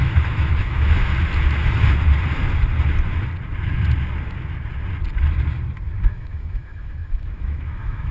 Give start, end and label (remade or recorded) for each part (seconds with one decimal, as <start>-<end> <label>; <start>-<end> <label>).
0.0-1.1 remade; 1.1-6.0 recorded; 6.0-8.1 remade